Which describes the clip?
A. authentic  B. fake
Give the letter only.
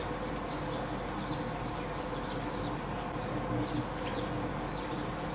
A